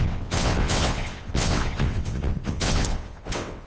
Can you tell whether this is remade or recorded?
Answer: remade